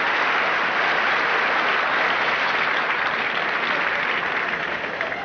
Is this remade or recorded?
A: recorded